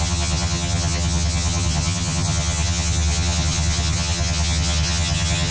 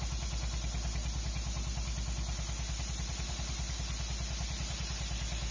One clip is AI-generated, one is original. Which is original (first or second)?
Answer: second